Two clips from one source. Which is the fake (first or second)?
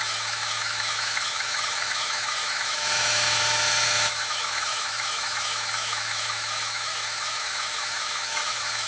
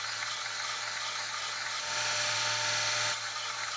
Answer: first